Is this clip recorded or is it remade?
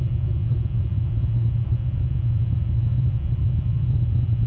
recorded